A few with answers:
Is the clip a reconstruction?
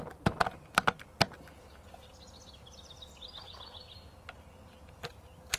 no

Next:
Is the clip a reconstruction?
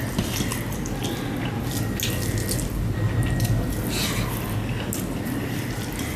no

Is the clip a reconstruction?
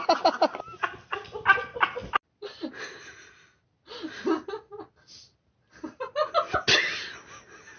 no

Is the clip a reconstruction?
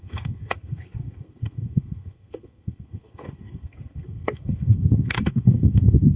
yes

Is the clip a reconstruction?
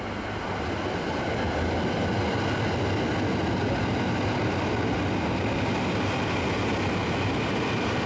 no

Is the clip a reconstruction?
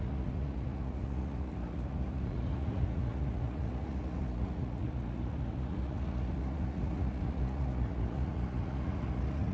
yes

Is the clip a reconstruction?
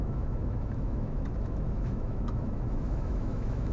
yes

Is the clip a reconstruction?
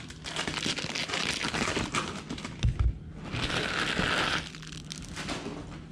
no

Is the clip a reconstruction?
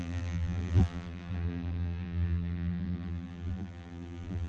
yes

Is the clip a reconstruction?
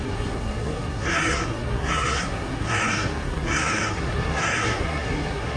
yes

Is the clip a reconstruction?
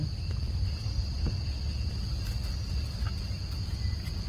no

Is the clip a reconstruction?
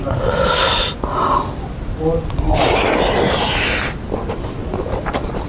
no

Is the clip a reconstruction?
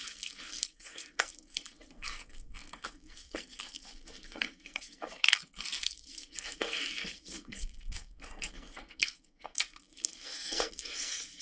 yes